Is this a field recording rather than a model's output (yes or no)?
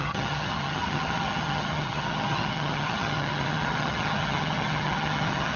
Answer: no